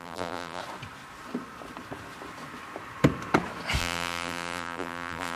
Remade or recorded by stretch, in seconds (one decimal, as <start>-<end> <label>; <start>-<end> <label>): 0.0-0.6 remade; 0.6-3.8 recorded; 3.8-5.4 remade